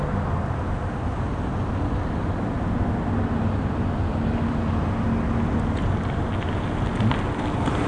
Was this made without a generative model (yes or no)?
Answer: yes